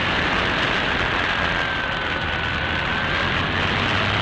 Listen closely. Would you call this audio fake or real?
real